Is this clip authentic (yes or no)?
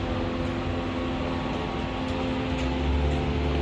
yes